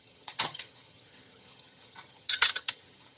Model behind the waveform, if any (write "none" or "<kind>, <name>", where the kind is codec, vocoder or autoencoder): vocoder, HiFi-GAN